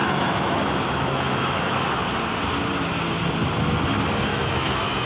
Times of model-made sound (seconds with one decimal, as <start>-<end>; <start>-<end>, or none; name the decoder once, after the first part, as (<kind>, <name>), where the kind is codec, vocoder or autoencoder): 0.0-2.0 (autoencoder, DAC-VAE); 4.3-5.1